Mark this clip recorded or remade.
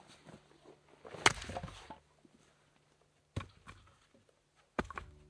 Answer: recorded